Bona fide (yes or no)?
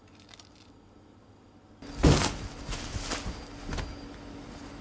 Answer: yes